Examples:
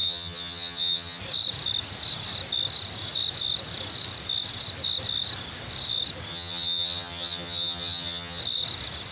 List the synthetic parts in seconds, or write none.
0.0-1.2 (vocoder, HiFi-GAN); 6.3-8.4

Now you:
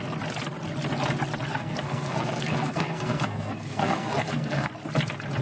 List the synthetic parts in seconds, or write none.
1.5-4.7 (codec, SNAC)